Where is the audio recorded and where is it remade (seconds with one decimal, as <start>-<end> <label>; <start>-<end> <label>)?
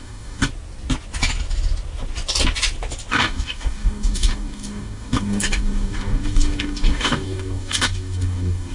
0.0-0.5 remade; 0.5-3.1 recorded; 3.1-8.7 remade